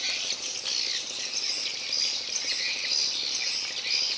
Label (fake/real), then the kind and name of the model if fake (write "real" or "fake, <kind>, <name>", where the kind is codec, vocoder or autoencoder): real